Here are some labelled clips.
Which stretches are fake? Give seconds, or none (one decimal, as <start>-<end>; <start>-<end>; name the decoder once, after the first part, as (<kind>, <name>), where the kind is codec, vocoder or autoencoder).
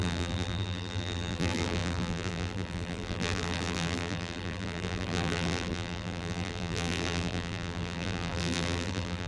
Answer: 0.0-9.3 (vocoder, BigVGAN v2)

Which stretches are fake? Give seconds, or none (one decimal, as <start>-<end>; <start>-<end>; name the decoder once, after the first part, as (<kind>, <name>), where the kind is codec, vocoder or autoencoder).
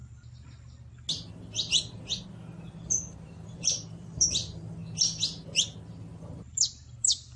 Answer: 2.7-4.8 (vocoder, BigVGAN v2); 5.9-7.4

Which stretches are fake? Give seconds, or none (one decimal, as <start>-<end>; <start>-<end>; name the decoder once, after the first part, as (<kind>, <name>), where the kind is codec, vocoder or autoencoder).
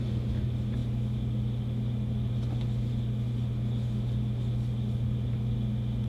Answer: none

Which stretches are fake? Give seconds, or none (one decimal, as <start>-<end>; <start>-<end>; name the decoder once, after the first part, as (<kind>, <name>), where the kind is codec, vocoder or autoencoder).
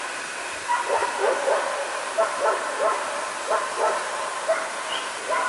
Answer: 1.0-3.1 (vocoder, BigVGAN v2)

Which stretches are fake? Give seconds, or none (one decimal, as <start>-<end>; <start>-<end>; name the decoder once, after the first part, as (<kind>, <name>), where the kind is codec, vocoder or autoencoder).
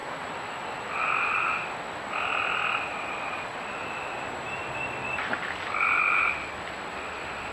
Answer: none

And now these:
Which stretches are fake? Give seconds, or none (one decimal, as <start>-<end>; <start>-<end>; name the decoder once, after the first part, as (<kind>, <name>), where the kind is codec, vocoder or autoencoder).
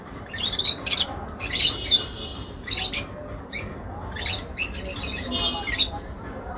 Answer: 0.0-2.3 (vocoder, BigVGAN v2); 5.9-6.6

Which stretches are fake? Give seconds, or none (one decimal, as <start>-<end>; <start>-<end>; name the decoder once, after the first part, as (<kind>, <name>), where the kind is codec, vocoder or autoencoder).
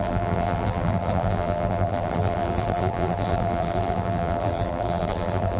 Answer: 0.0-5.6 (vocoder, BigVGAN v2)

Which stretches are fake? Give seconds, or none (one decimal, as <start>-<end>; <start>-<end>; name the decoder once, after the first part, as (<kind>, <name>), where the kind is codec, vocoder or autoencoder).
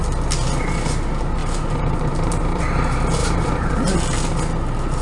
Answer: 1.4-2.6 (vocoder, BigVGAN v2); 3.2-3.7